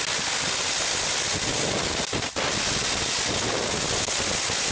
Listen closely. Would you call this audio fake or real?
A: real